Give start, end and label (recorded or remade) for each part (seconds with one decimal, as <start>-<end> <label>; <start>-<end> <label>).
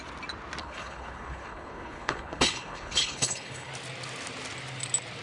0.0-0.6 recorded; 0.6-3.7 remade; 3.7-5.2 recorded